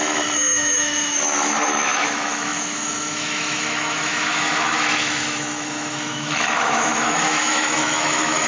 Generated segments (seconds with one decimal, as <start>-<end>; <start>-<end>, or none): 0.0-8.5